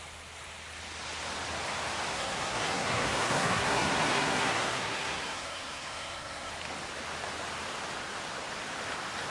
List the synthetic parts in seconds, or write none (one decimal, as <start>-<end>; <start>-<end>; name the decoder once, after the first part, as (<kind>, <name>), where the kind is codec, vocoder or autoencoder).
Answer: 2.1-6.5 (codec, SNAC)